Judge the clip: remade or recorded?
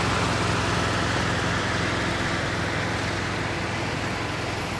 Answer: recorded